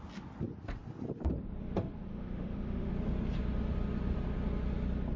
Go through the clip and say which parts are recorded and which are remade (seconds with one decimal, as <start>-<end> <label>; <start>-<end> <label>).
0.0-2.1 recorded; 2.1-2.9 remade; 2.9-5.2 recorded